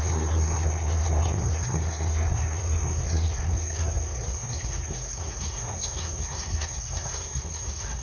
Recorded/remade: remade